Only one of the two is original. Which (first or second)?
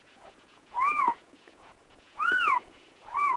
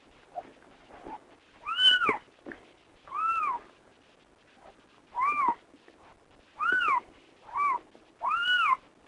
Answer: second